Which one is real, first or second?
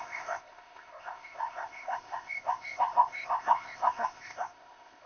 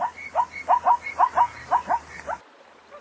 second